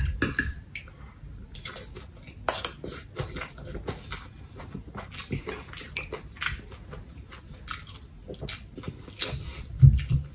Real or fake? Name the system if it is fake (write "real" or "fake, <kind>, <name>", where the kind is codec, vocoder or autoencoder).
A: real